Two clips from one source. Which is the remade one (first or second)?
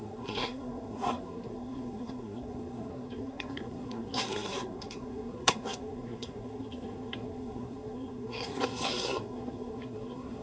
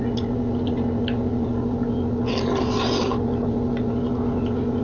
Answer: first